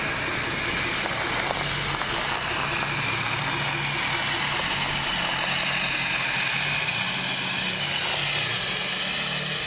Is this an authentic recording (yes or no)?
yes